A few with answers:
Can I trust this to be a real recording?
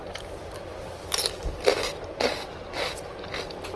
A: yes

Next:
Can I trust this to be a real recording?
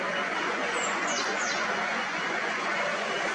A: no